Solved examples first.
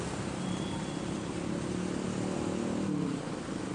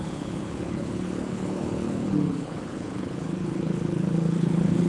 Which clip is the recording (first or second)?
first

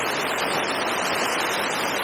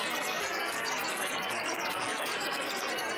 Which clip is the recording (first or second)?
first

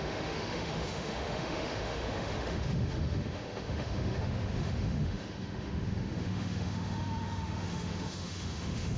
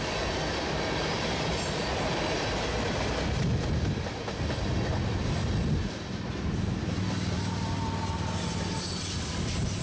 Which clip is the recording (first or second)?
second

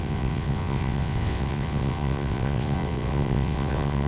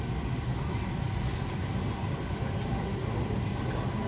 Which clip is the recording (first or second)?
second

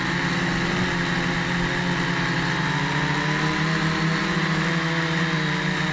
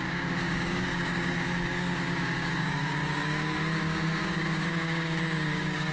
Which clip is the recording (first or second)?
first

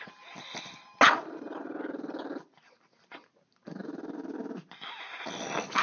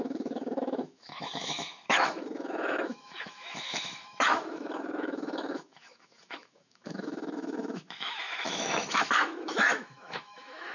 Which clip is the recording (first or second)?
first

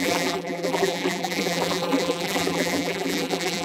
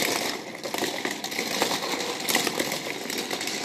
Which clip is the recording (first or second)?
second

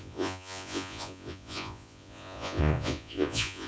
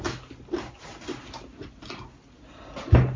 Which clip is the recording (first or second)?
second